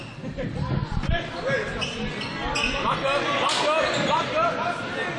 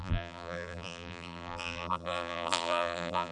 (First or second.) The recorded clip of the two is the first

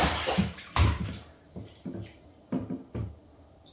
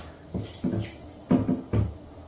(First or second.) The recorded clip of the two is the second